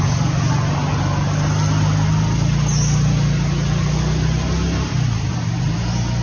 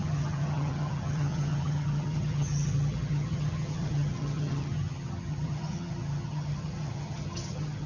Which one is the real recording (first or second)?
first